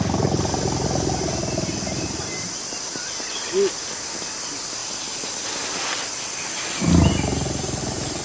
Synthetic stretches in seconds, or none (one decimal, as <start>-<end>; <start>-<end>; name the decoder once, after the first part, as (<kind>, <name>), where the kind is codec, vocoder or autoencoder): none